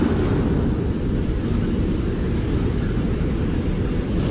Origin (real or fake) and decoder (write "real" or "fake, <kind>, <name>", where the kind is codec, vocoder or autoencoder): real